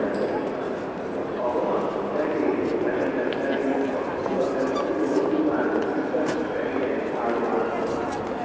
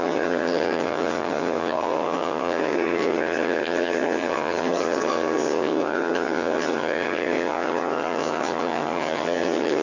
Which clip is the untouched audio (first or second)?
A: first